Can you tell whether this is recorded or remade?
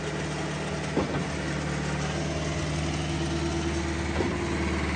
recorded